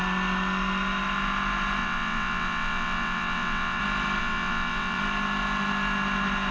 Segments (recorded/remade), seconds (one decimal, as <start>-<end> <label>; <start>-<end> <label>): 0.0-1.8 recorded; 1.8-3.8 remade; 3.8-4.2 recorded; 4.2-5.0 remade; 5.0-6.5 recorded

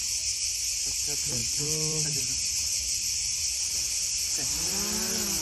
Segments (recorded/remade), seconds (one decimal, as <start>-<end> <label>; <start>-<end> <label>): 0.0-0.7 recorded; 0.7-3.3 remade; 3.3-5.4 recorded